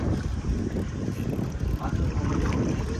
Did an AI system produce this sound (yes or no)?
no